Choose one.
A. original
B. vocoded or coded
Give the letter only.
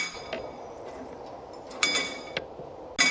A